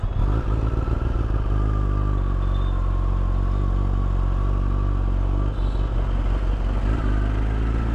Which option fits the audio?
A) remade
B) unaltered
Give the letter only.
B